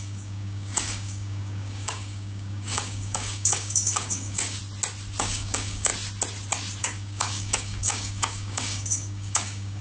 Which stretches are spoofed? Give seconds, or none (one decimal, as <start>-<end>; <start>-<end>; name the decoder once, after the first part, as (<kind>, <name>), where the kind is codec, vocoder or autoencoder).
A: 0.0-4.6 (codec, DAC); 5.2-5.9; 6.8-9.8